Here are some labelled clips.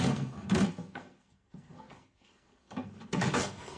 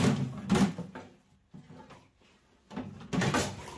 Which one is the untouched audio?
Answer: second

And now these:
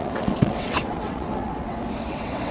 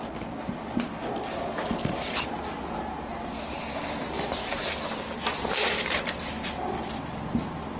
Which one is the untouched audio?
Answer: second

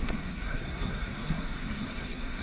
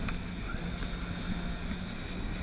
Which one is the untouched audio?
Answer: second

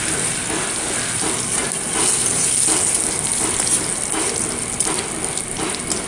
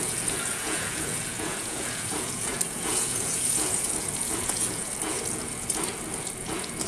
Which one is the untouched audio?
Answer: first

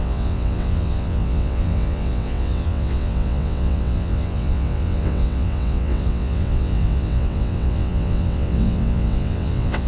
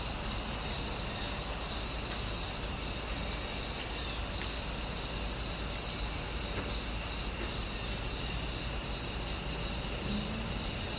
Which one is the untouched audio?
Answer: second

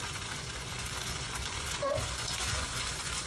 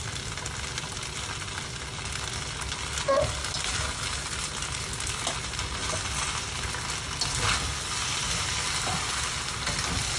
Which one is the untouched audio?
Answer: second